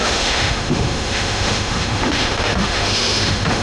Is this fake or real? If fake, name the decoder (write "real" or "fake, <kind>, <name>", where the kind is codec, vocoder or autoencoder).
fake, autoencoder, DAC-VAE